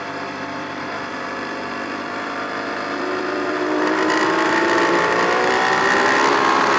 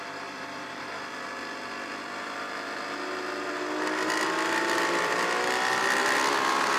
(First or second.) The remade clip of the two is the first